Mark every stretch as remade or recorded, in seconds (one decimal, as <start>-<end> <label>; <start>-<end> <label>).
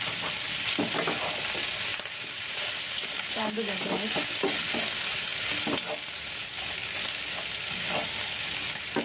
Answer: 0.0-1.9 recorded; 1.9-3.4 remade; 3.4-9.0 recorded